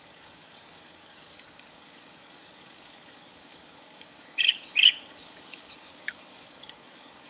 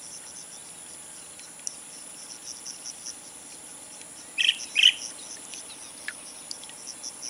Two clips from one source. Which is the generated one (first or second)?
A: first